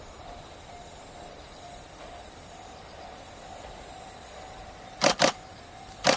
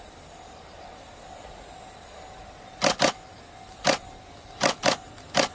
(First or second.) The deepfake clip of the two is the first